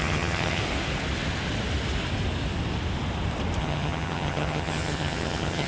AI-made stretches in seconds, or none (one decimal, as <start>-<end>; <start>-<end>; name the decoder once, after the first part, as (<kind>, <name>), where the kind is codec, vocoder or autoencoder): 0.0-0.6 (vocoder, HiFi-GAN); 3.6-5.7